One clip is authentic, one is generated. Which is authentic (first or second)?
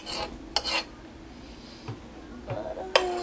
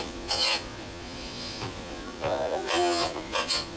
first